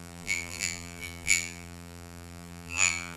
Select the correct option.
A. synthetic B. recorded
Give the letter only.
A